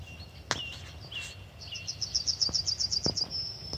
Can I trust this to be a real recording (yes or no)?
yes